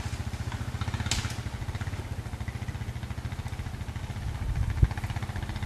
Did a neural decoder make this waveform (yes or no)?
no